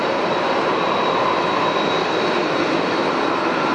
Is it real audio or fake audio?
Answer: real